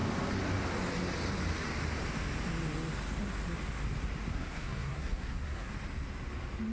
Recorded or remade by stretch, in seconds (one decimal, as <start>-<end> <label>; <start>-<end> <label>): 0.0-4.3 recorded; 4.3-5.7 remade; 5.7-6.7 recorded